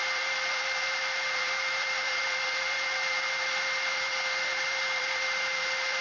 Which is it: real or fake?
fake